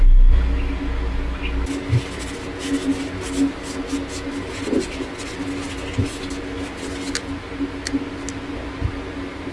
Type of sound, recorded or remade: recorded